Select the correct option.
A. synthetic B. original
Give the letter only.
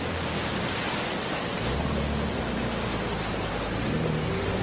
B